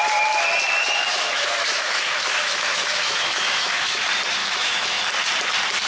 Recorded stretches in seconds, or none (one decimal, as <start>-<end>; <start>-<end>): 0.0-1.1; 4.0-4.4; 5.0-5.9